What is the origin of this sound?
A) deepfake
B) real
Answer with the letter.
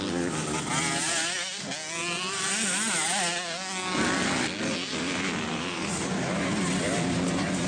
B